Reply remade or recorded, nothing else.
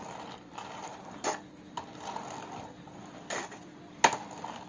recorded